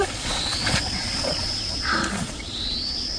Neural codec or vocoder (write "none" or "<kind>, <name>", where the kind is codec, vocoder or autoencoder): vocoder, Vocos